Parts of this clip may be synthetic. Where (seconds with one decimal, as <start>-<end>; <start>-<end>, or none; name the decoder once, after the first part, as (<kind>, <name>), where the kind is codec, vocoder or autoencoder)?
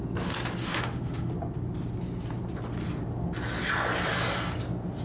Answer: 0.6-1.3 (autoencoder, DAC-VAE)